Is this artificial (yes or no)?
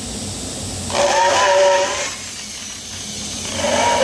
no